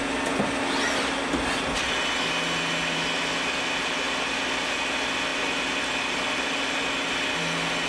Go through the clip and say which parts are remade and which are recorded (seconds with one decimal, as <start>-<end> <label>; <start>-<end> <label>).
0.0-7.9 recorded